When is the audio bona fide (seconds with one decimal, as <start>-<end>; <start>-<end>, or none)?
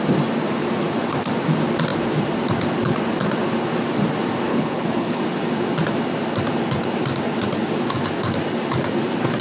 0.0-4.5; 5.2-9.4